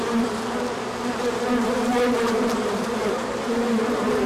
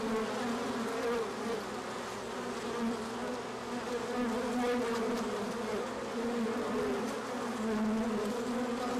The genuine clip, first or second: second